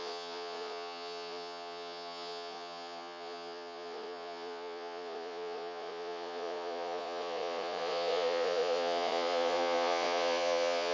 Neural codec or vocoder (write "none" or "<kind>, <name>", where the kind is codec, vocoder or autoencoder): vocoder, Vocos